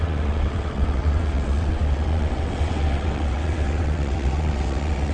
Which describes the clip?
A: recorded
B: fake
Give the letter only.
B